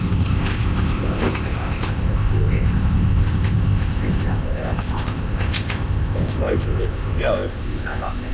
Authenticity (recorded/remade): remade